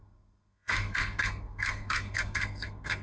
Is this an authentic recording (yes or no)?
no